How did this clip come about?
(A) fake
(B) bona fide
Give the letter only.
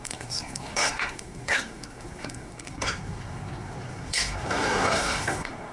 A